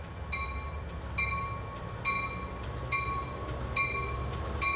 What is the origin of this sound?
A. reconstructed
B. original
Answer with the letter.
B